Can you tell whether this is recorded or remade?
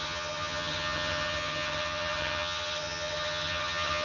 remade